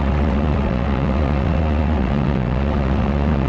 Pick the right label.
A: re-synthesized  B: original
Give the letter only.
A